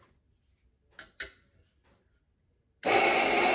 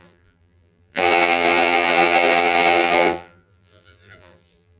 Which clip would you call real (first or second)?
first